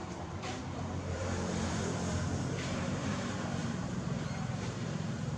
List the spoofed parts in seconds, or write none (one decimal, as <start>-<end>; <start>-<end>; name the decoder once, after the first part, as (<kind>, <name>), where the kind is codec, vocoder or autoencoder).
0.0-3.2 (vocoder, BigVGAN v2); 3.6-5.4